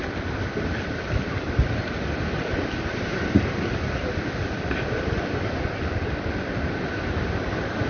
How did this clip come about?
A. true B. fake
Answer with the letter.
A